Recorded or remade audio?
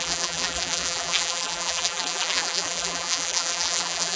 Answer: remade